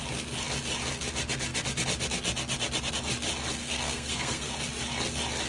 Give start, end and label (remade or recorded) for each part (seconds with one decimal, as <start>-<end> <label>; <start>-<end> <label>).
0.0-3.6 recorded; 3.6-4.5 remade; 4.5-5.5 recorded